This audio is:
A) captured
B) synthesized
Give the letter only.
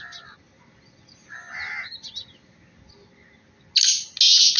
A